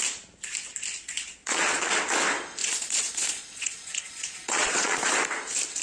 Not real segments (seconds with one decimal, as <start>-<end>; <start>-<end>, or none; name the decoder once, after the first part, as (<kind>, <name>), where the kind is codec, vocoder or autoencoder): 1.4-1.9 (vocoder, Vocos); 2.6-5.1